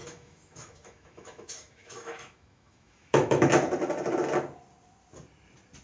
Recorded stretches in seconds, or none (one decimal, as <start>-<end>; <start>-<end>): 3.5-5.8